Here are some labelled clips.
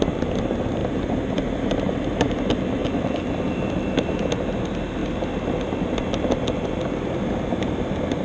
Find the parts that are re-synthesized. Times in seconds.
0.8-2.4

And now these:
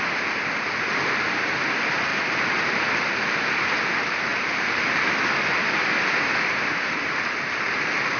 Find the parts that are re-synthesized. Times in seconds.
2.1-3.0; 4.3-5.3

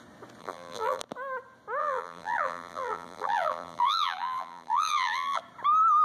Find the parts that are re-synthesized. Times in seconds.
0.4-1.0; 1.8-5.4

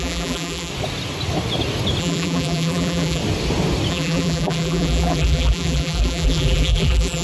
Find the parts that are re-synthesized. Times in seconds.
0.0-0.7; 2.0-3.2; 3.9-7.2

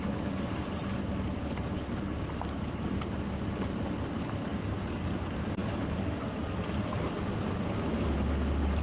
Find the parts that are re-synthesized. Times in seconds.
none